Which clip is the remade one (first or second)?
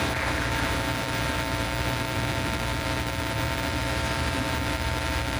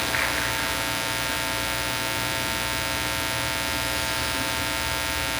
first